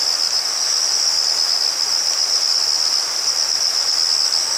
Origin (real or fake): real